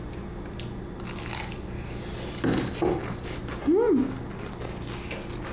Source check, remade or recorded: recorded